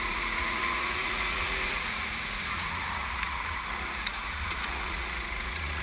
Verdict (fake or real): fake